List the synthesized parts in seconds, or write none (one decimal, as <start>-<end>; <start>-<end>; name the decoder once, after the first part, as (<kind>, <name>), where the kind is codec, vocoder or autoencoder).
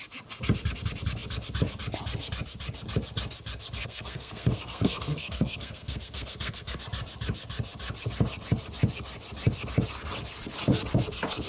3.8-6.8 (codec, SNAC)